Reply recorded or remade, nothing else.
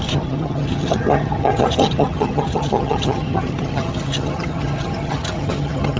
remade